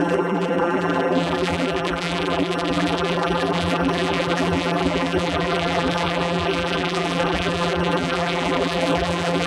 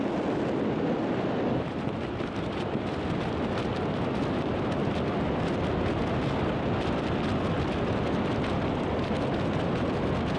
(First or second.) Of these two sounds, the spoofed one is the first